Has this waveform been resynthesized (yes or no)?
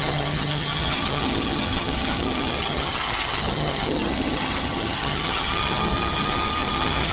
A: yes